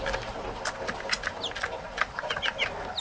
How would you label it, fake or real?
real